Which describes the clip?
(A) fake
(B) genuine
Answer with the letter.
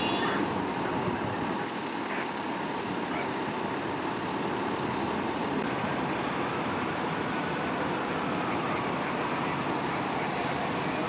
A